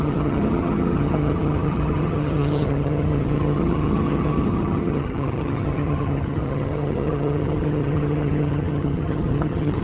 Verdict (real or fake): fake